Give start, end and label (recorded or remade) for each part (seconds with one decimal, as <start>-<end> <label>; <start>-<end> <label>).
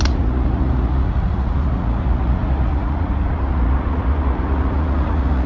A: 0.0-5.5 remade